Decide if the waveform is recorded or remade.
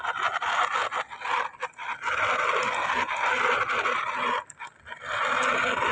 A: recorded